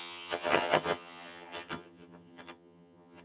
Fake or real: fake